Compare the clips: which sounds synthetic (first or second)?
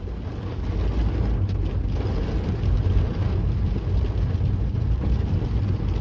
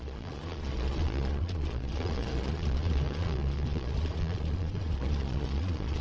second